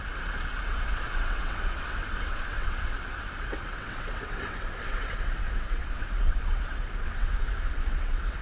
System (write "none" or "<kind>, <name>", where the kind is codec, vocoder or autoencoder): vocoder, WaveNeXt